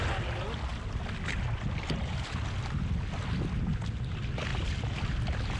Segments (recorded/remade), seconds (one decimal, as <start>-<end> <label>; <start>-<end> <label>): 0.0-5.6 recorded